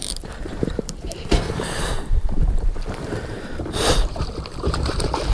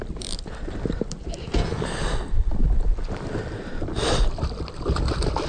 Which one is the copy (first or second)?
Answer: first